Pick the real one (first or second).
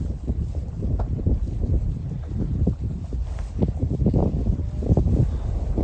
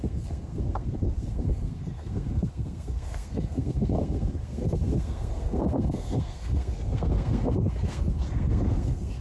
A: first